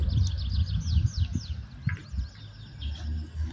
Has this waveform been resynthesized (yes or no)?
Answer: no